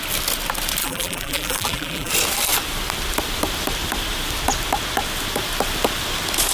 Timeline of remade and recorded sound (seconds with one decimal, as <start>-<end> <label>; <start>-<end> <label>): 0.0-0.8 recorded; 0.8-2.1 remade; 2.1-6.5 recorded